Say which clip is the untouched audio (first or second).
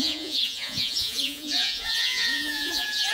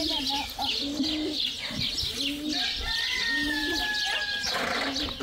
second